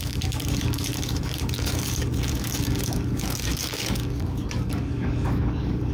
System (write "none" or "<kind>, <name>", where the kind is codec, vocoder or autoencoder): codec, DAC